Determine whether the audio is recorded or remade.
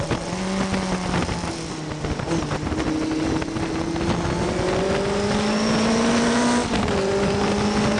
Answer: recorded